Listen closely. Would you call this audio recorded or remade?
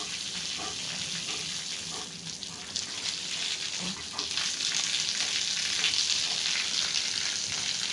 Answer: recorded